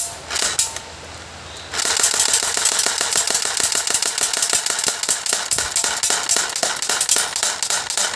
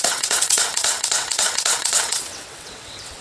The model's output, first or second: second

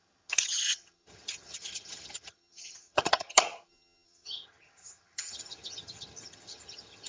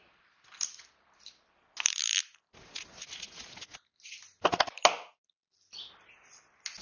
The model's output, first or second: first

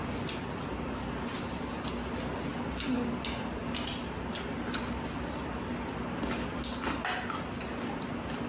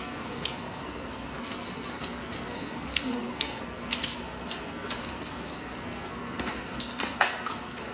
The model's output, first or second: second